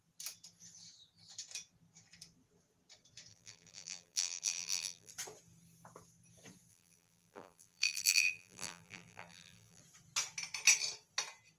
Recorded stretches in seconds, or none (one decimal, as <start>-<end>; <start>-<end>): 0.0-3.3; 5.1-6.7; 9.8-11.6